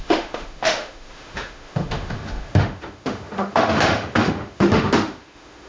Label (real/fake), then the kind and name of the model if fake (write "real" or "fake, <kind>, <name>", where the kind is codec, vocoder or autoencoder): fake, autoencoder, DAC-VAE